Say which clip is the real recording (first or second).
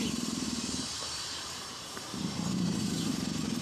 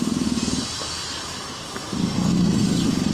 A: second